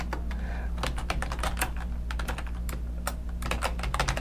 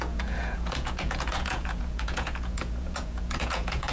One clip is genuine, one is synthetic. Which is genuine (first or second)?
first